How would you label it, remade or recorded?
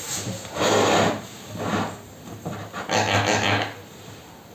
recorded